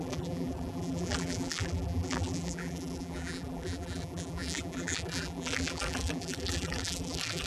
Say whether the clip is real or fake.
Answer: fake